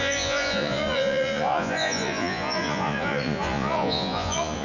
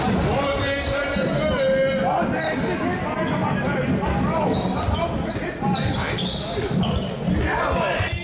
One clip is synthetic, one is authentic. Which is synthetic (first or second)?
first